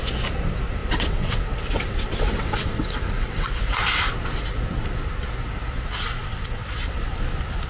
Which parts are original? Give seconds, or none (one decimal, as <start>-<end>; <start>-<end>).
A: 0.0-0.8; 3.6-6.2; 7.1-7.7